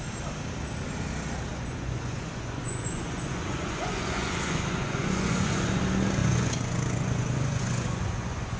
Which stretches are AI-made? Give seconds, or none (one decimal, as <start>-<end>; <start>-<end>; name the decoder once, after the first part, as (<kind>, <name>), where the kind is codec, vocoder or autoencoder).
1.5-5.8 (vocoder, Vocos); 6.2-8.6